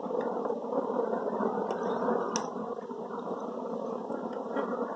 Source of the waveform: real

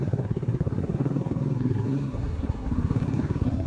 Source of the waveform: fake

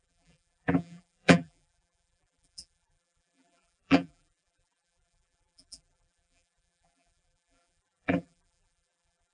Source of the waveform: fake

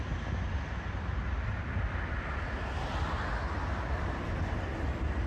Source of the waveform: real